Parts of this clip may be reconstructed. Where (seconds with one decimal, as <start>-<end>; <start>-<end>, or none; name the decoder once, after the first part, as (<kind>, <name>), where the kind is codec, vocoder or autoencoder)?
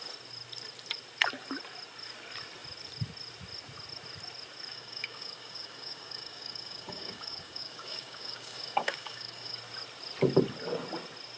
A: 4.7-9.6 (codec, DAC)